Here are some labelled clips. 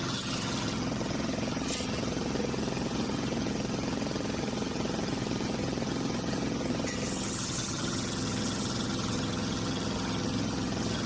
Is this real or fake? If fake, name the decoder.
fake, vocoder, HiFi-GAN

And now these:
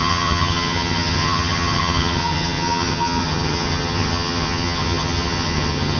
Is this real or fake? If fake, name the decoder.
fake, vocoder, HiFi-GAN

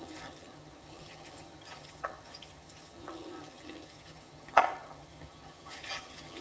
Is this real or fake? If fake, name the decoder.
fake, vocoder, HiFi-GAN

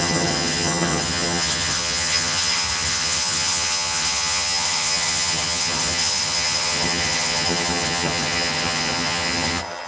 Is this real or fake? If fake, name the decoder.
fake, vocoder, HiFi-GAN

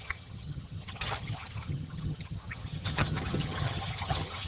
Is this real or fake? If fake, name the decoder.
fake, vocoder, HiFi-GAN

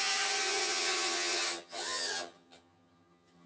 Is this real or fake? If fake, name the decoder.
fake, vocoder, HiFi-GAN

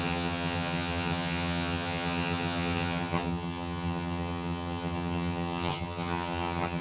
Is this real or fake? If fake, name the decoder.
fake, vocoder, HiFi-GAN